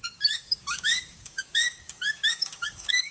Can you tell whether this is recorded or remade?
remade